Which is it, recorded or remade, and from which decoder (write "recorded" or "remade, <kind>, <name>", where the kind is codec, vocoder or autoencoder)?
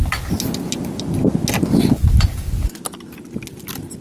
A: recorded